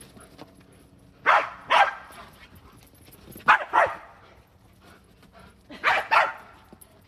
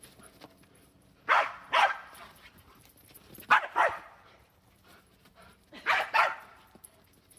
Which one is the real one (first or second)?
first